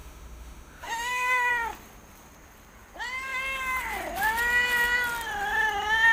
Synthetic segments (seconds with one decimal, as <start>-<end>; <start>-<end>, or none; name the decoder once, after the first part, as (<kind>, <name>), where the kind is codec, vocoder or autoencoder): 0.0-1.5 (autoencoder, DAC-VAE)